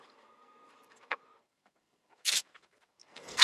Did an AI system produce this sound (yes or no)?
yes